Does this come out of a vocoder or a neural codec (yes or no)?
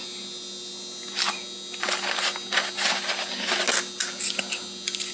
no